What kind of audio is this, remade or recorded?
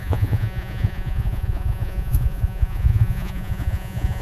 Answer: remade